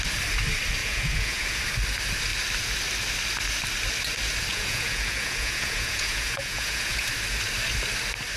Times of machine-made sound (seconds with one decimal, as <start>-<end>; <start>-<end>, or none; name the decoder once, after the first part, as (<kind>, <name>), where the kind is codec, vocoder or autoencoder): 0.8-1.6 (vocoder, Vocos); 4.5-7.1